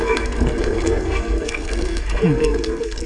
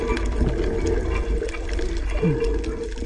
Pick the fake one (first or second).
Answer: first